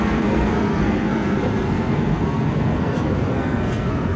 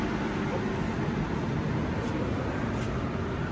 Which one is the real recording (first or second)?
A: second